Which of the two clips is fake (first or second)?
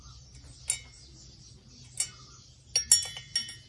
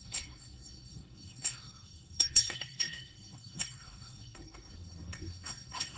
second